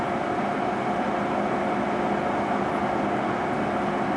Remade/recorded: recorded